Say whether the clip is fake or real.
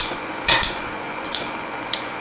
fake